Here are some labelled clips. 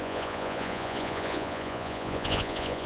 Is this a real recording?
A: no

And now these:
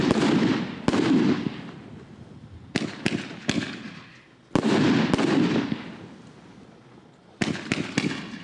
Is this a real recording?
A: yes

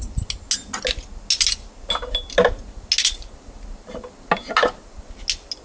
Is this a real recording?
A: yes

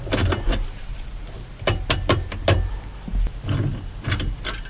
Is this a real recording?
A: yes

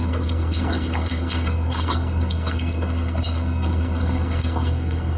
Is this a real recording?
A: no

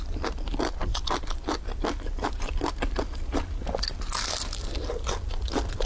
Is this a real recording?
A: yes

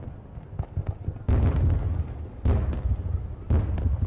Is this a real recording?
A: yes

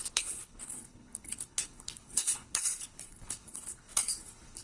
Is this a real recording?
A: no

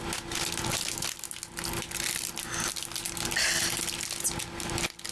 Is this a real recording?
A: yes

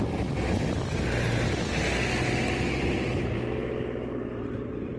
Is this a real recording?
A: yes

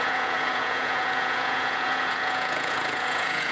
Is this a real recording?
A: no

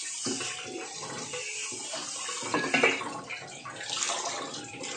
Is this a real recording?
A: yes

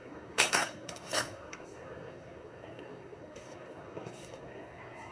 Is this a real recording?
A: no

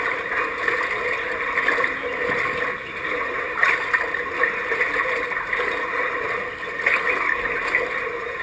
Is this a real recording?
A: yes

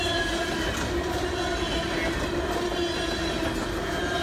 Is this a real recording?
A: yes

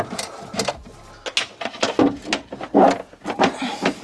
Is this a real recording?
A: yes